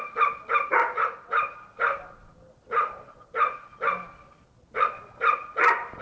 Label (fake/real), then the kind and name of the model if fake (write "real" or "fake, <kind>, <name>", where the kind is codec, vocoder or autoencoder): real